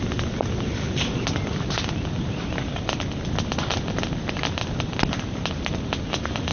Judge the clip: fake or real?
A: real